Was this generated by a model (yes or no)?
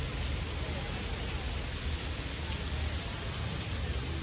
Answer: no